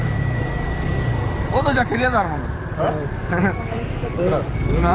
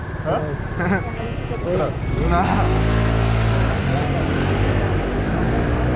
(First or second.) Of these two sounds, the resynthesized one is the first